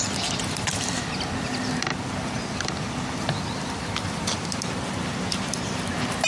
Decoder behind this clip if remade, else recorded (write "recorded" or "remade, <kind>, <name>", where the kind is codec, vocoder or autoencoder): recorded